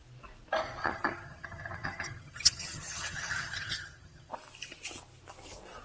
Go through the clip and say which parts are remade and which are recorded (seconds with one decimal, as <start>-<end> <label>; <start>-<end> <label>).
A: 0.0-0.8 recorded; 0.8-4.3 remade; 4.3-5.8 recorded